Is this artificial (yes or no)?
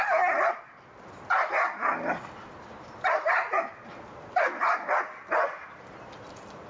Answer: no